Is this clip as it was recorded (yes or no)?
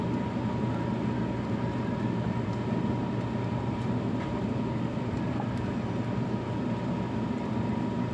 yes